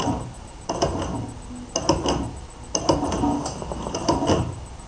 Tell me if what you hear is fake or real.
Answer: real